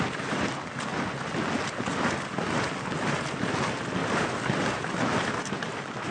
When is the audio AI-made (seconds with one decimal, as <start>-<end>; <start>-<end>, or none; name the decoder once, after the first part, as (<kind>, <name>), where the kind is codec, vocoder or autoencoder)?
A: 4.0-4.8 (vocoder, BigVGAN v2)